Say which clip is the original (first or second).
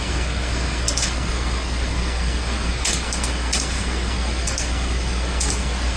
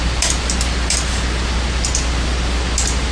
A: second